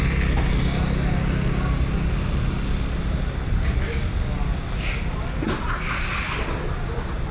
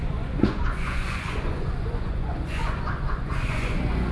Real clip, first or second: first